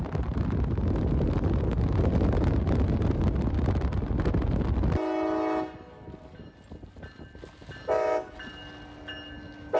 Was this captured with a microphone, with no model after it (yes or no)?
yes